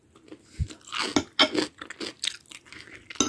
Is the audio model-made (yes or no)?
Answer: no